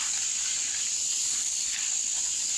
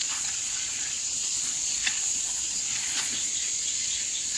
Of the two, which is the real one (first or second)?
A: first